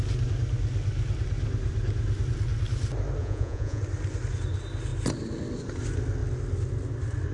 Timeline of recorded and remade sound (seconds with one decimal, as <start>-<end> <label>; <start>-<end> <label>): 0.0-3.2 recorded; 3.2-3.8 remade; 3.8-7.3 recorded